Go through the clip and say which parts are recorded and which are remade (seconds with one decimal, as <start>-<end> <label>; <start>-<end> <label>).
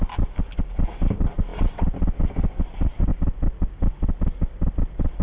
0.0-5.2 recorded